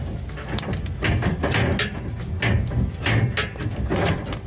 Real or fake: real